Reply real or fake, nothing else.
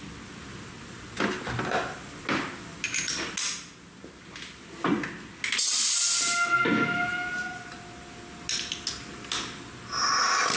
real